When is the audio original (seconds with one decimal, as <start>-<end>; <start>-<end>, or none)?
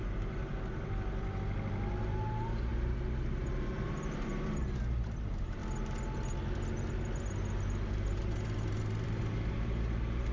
0.4-2.0; 5.6-7.9